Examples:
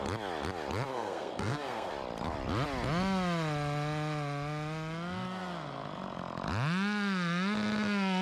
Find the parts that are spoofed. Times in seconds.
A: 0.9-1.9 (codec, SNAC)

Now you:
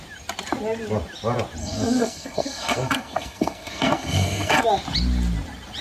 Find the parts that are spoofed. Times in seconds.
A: 1.6-4.6 (codec, SNAC)

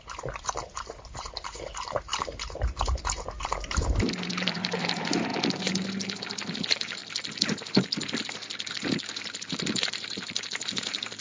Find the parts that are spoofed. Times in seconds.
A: 0.0-5.3 (vocoder, BigVGAN v2); 6.2-7.0; 8.7-11.2

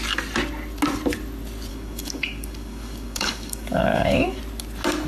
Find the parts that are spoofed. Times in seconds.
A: 1.7-4.4 (codec, DAC)

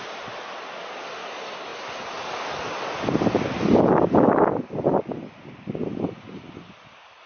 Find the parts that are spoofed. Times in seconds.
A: none

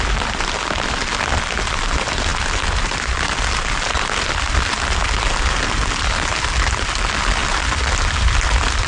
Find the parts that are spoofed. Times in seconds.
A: none